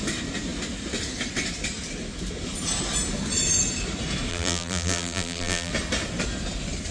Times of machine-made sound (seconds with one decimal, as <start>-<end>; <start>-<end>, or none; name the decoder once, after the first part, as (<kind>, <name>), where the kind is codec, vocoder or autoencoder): 4.3-5.7 (vocoder, BigVGAN v2)